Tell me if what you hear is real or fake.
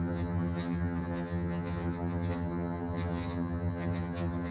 fake